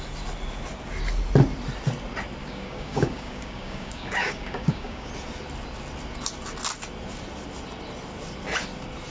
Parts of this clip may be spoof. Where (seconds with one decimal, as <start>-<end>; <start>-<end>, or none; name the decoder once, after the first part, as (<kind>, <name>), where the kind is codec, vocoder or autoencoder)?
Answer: 2.4-5.1 (codec, DAC)